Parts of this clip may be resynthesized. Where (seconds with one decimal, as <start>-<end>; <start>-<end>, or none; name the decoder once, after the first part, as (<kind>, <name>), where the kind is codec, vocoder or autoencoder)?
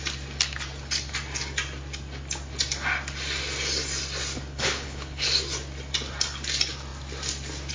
4.5-5.3 (codec, HILCodec)